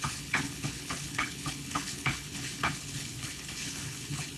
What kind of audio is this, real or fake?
fake